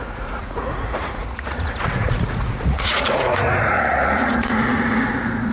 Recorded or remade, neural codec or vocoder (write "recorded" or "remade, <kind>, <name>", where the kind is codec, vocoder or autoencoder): remade, vocoder, Vocos